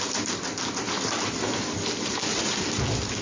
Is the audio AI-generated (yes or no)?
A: no